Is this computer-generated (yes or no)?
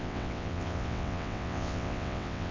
yes